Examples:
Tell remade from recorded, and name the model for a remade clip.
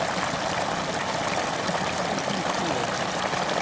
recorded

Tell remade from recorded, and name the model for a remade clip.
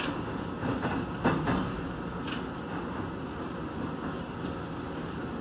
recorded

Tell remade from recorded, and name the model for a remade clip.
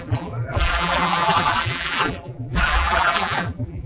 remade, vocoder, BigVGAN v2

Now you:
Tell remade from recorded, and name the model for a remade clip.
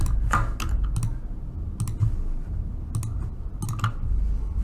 recorded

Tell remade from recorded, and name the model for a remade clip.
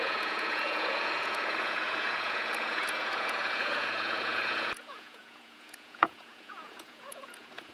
remade, vocoder, Vocos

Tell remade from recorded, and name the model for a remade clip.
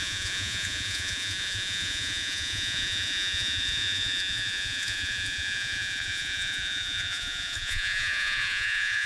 remade, vocoder, Vocos